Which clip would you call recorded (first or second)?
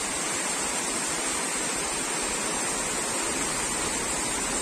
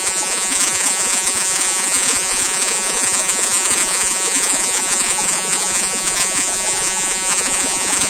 first